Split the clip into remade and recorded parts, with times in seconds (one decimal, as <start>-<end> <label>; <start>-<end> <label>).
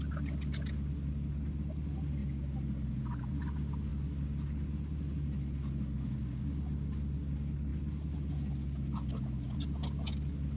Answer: 0.0-10.6 recorded